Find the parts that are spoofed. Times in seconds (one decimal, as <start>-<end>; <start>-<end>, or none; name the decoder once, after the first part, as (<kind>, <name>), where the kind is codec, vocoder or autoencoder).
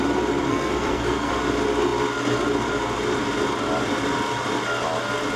0.4-1.3 (codec, SNAC)